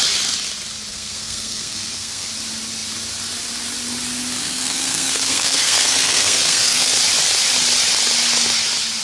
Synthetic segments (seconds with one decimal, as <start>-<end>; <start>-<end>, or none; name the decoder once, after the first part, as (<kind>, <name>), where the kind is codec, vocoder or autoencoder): 0.9-2.3 (codec, SNAC); 4.4-6.9